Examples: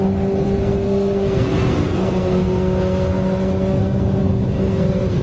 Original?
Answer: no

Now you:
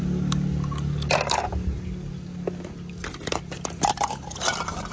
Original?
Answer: yes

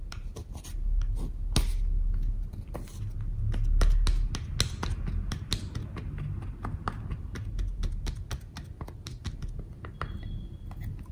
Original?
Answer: yes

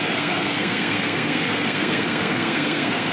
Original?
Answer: no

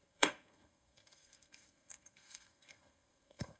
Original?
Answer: no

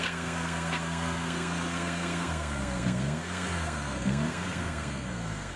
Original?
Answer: no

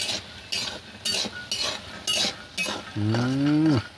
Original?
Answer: yes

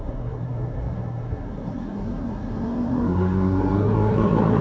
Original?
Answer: no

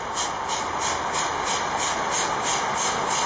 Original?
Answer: yes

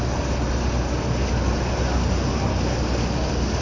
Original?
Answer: yes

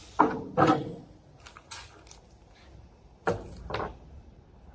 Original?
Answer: yes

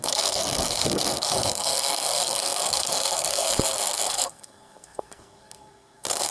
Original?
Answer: no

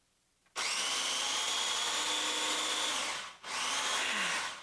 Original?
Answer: yes